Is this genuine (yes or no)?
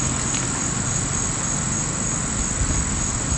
yes